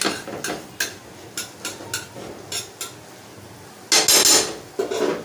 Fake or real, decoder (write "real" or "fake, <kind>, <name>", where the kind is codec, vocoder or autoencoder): real